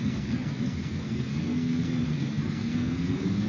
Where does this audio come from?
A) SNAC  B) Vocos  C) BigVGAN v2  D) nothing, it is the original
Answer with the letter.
A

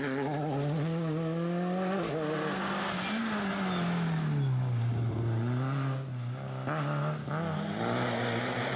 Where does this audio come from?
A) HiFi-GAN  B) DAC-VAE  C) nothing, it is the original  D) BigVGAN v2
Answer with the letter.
C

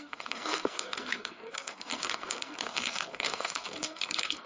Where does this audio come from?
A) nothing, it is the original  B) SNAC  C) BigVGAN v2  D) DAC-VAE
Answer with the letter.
B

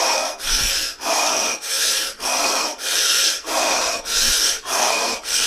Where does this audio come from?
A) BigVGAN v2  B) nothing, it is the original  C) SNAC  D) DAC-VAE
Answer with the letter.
C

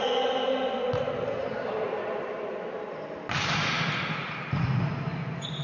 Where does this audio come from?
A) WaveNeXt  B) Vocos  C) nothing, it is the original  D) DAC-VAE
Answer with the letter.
C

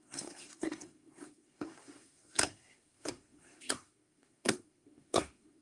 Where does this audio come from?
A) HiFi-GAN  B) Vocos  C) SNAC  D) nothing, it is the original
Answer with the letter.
C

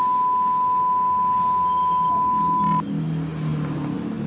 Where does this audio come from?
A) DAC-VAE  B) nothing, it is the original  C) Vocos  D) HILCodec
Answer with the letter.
B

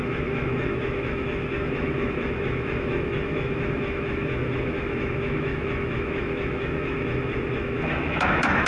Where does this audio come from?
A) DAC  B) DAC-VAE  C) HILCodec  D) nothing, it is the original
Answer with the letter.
B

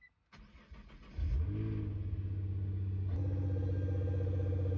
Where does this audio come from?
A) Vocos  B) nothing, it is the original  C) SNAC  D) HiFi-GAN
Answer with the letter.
B